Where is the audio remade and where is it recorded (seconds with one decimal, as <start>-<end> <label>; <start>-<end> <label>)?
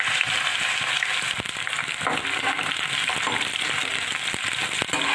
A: 0.0-5.1 recorded